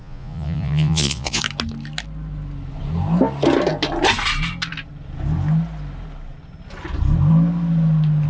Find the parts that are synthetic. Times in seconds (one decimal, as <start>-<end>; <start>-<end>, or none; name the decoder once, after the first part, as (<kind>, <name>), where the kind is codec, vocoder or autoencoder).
0.0-1.4 (vocoder, Vocos)